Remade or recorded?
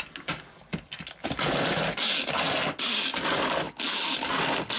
recorded